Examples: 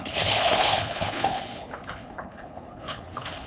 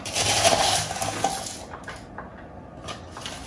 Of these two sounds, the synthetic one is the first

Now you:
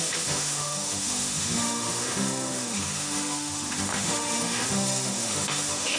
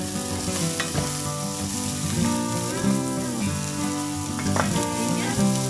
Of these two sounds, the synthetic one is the first